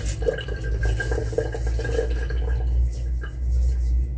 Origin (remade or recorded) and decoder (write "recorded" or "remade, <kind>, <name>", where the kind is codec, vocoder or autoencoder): recorded